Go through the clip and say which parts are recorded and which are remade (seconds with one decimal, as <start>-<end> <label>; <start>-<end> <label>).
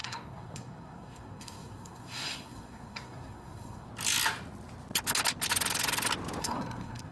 0.0-3.9 remade; 3.9-6.4 recorded; 6.4-7.1 remade